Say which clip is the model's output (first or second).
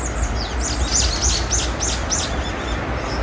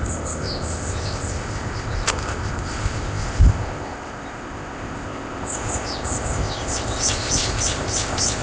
second